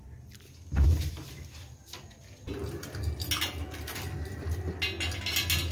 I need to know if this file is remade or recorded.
recorded